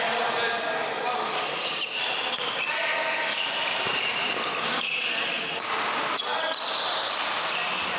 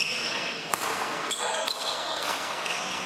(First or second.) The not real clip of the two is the second